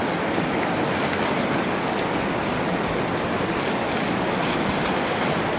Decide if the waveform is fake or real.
real